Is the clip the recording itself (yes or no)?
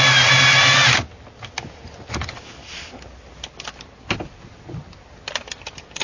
yes